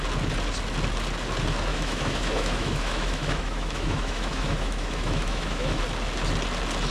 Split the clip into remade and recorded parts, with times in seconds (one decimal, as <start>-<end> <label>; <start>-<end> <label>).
0.0-1.7 recorded; 1.7-5.8 remade; 5.8-6.9 recorded